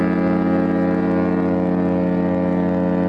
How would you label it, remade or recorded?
recorded